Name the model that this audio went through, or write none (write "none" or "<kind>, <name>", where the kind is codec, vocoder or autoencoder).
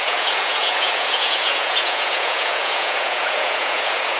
vocoder, Vocos